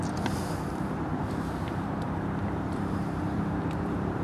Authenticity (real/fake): fake